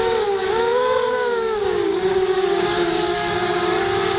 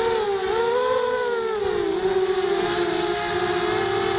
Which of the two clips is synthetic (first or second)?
first